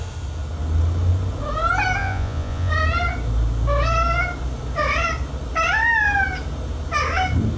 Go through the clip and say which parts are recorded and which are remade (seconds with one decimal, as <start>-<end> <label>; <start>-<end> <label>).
0.0-2.0 recorded; 2.0-2.7 remade; 2.7-7.6 recorded